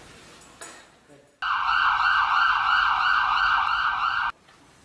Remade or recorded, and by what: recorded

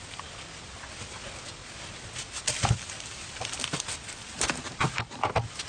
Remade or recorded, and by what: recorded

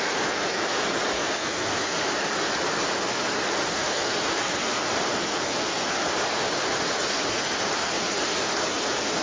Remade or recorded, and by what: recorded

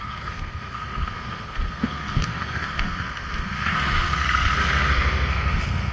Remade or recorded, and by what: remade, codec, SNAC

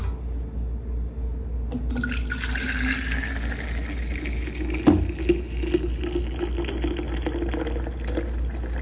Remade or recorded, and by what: recorded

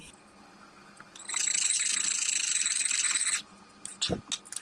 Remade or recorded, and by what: recorded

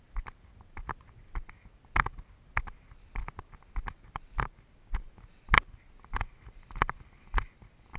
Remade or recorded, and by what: recorded